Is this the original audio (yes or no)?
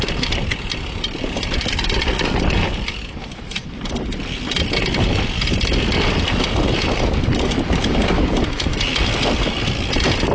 yes